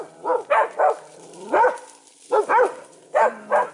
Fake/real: real